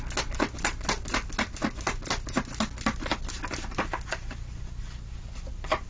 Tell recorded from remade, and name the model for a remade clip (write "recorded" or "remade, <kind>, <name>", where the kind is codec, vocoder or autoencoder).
recorded